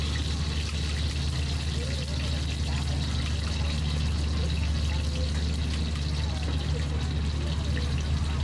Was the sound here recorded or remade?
recorded